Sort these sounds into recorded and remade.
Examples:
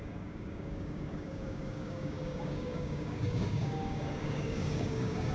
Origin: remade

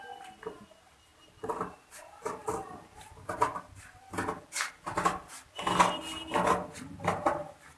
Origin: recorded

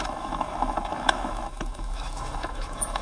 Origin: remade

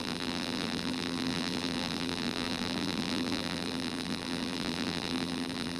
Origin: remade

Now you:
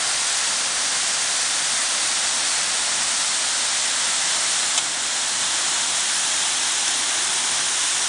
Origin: recorded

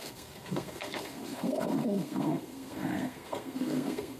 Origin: remade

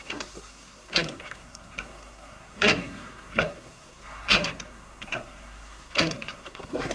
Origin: remade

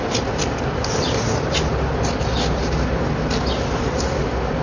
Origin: recorded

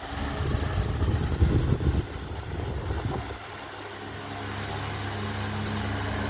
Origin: recorded